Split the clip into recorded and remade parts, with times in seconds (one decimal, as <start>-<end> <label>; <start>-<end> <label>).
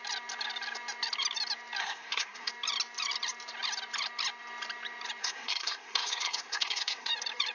0.0-1.8 recorded; 1.8-2.5 remade; 2.5-5.2 recorded; 5.2-7.1 remade; 7.1-7.5 recorded